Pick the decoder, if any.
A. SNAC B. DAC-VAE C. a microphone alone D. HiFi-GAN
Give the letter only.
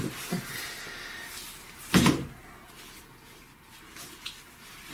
C